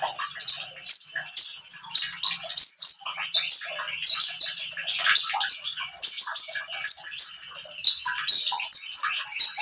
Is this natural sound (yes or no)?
yes